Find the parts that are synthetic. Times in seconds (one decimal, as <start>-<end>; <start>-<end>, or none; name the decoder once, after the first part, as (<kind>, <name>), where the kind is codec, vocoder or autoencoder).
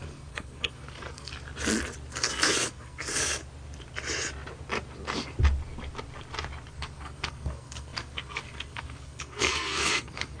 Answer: 0.0-1.3 (codec, SNAC); 2.1-3.4; 6.7-10.4